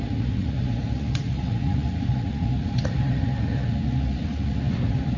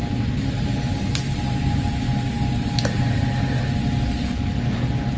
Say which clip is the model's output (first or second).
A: first